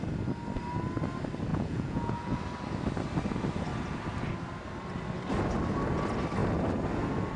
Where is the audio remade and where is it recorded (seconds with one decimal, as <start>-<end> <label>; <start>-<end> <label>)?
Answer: 0.0-1.5 recorded; 1.5-2.4 remade; 2.4-7.4 recorded